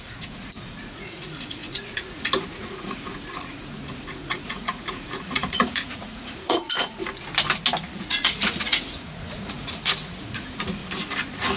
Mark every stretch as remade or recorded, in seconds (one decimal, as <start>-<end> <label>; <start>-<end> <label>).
0.0-7.0 remade; 7.0-8.0 recorded; 8.0-10.8 remade; 10.8-11.6 recorded